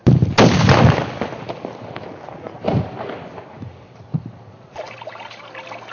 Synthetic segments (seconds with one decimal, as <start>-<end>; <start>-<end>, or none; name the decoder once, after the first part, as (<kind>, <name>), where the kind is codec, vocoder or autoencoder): 3.5-4.1 (vocoder, BigVGAN v2)